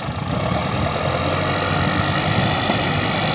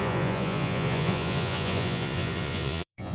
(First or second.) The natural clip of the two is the first